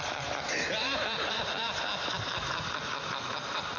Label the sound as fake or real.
fake